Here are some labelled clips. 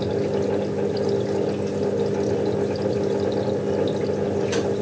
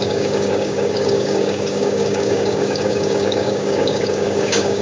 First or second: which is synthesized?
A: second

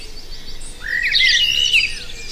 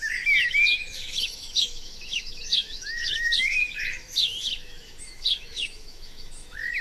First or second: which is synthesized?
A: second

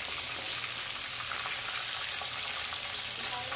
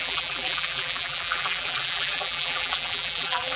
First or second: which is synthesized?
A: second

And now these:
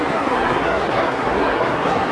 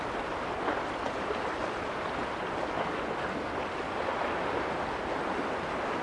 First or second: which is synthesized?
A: first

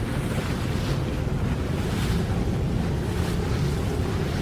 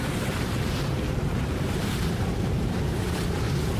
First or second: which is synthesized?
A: second